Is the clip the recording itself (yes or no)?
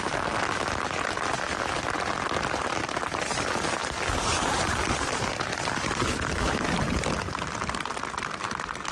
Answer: yes